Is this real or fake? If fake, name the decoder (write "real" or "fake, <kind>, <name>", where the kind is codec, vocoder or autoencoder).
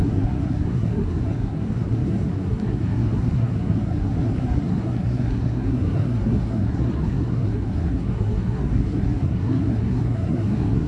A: fake, codec, SNAC